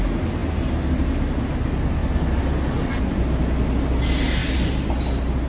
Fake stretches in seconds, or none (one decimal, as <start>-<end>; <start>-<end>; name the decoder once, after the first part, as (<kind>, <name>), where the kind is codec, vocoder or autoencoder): none